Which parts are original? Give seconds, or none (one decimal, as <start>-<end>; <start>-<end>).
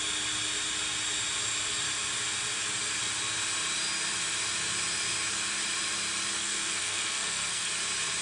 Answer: 0.0-6.4; 7.7-8.2